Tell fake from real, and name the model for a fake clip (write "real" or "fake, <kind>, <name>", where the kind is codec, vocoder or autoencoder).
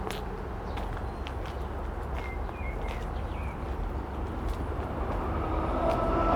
real